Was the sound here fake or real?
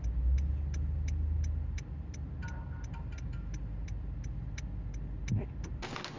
real